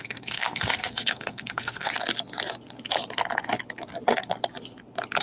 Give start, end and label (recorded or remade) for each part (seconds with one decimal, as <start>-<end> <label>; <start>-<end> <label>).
0.0-1.9 remade; 1.9-5.2 recorded